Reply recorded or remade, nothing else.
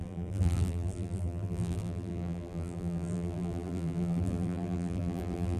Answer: remade